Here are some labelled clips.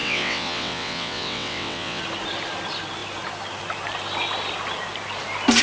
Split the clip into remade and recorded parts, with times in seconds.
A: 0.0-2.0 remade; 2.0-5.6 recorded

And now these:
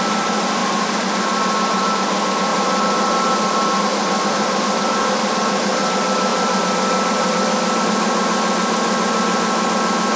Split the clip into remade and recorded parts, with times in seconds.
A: 0.0-0.6 recorded; 0.6-1.9 remade; 1.9-2.5 recorded; 2.5-3.8 remade; 3.8-6.3 recorded; 6.3-7.8 remade; 7.8-10.2 recorded

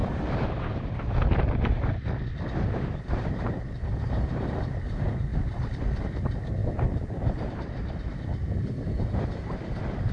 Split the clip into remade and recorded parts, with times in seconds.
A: 0.0-3.0 recorded; 3.0-5.3 remade; 5.3-6.0 recorded; 6.0-10.1 remade